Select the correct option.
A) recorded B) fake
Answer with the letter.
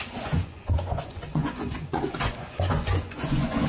B